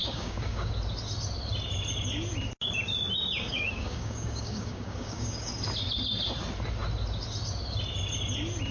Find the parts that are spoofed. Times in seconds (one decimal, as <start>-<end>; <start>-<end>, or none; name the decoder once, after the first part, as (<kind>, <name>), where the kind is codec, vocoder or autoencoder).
0.0-0.7 (codec, DAC); 3.4-5.5